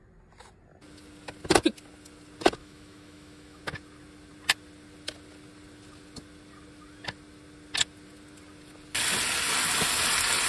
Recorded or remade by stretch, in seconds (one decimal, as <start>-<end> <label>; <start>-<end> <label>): 0.0-2.6 recorded; 2.6-3.6 remade; 3.6-10.5 recorded